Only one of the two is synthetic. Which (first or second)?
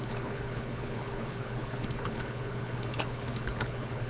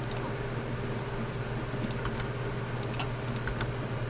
first